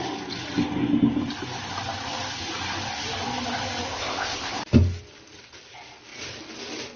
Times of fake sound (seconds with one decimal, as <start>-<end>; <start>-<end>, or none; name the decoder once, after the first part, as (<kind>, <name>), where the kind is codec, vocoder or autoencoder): 3.9-4.6 (codec, ZipCodec)